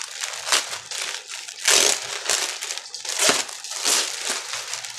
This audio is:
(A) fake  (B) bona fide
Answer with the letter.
B